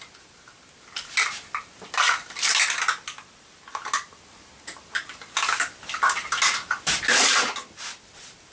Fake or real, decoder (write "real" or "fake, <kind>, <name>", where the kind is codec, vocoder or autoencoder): real